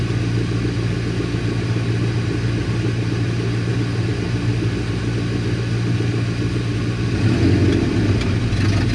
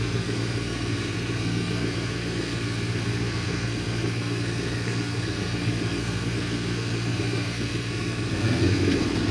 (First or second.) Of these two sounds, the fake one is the second